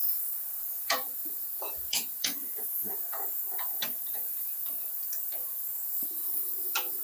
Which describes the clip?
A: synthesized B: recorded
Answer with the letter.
A